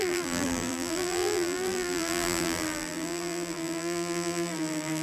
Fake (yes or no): yes